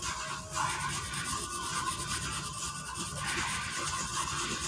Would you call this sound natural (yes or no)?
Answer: yes